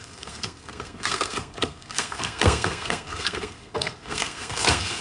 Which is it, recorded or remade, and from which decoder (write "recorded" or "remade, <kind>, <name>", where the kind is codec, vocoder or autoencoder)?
remade, codec, SNAC